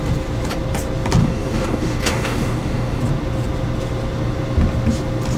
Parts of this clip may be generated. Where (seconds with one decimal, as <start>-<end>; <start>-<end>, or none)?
1.2-3.0